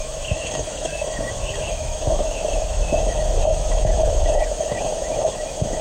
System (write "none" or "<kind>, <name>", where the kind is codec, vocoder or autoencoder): autoencoder, DAC-VAE